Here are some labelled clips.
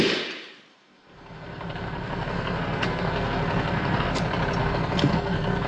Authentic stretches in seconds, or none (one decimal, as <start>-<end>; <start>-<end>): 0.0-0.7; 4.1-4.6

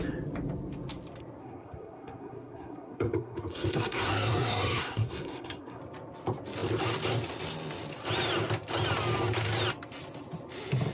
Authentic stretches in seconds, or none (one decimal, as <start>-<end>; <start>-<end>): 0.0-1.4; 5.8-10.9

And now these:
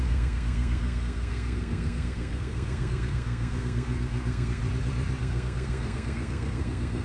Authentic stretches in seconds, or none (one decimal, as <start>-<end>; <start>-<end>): 4.6-5.2

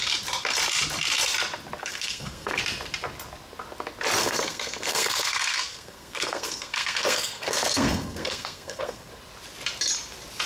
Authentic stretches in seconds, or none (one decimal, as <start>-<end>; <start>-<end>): 0.0-1.8; 2.6-4.2; 9.1-10.5

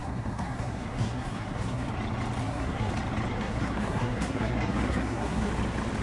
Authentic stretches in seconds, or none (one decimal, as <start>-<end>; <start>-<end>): 1.9-2.4; 2.9-3.3; 5.5-6.0

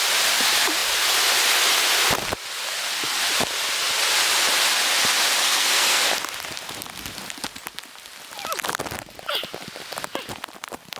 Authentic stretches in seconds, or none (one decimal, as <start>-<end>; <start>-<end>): 0.0-5.4; 6.1-11.0